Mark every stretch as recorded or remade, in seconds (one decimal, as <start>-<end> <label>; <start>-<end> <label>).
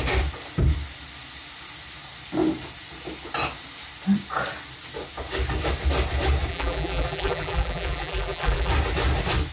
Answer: 0.0-6.5 recorded; 6.5-8.7 remade; 8.7-9.5 recorded